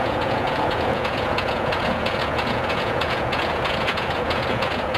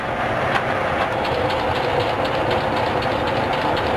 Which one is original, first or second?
second